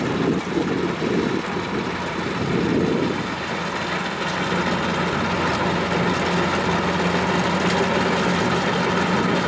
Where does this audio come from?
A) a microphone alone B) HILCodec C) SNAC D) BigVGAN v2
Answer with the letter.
A